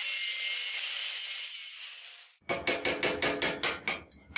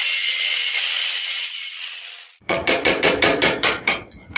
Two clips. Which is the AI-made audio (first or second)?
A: second